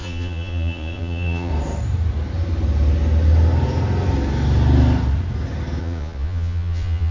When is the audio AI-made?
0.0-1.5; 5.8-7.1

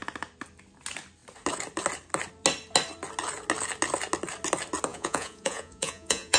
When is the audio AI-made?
4.9-6.4

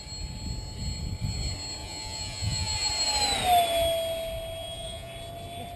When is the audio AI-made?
1.8-2.9; 4.6-5.1

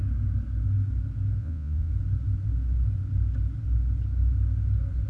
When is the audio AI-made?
1.4-1.9

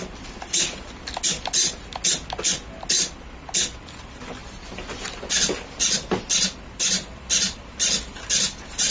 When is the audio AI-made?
none

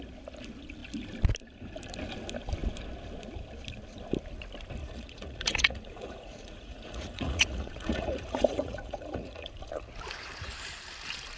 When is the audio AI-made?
4.8-9.5

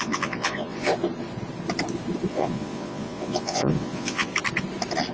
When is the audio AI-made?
0.0-0.9; 2.3-4.3

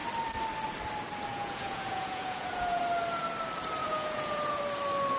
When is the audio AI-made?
1.3-2.8; 3.8-4.6